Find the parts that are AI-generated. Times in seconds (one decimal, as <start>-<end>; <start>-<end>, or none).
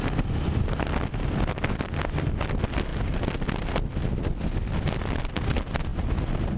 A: none